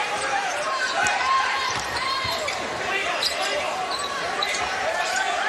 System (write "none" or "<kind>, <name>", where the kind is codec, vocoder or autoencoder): vocoder, BigVGAN v2